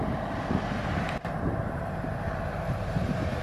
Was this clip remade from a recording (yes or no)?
yes